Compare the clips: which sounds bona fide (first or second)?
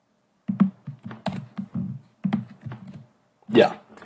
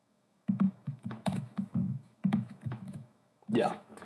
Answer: first